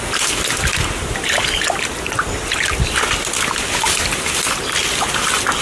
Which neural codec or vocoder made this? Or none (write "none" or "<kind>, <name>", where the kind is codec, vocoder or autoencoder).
none